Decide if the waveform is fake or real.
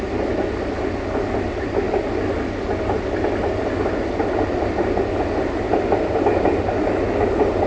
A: real